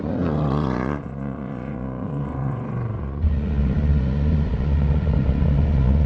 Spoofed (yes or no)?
yes